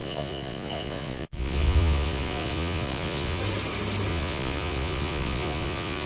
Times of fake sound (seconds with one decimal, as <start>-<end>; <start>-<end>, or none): 0.0-3.4; 4.1-6.1